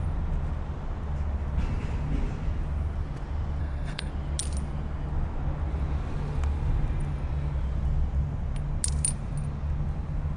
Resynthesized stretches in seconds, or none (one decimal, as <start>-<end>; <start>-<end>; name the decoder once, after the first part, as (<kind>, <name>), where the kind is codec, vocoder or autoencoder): 3.6-4.1 (codec, SNAC)